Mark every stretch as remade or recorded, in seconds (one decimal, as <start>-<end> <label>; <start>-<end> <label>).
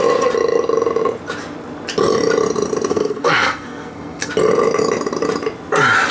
0.0-2.9 recorded; 2.9-4.3 remade; 4.3-6.1 recorded